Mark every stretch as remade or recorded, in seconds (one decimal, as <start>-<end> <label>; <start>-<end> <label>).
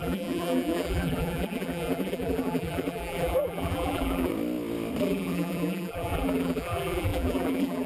0.0-4.3 remade; 4.3-5.0 recorded; 5.0-7.9 remade